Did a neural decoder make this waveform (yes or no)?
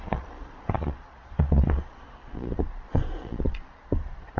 yes